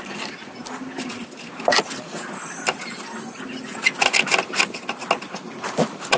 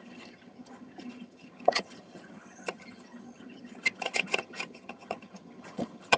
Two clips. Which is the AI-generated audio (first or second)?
second